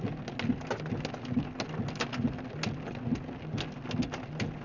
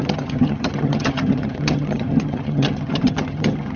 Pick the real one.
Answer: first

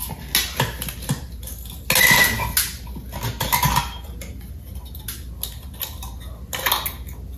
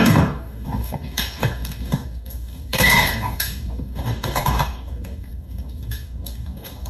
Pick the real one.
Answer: first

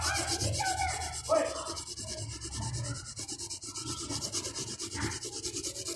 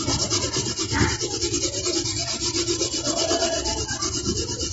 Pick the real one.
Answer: first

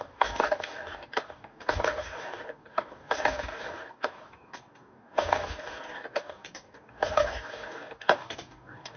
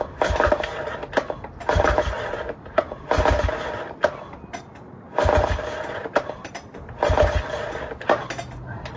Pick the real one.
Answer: second